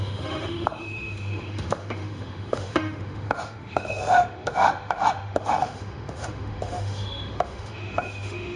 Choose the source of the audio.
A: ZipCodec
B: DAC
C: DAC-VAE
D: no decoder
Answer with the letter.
C